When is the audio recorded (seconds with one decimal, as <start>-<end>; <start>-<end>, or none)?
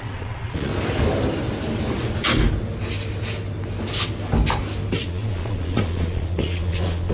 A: 0.7-5.0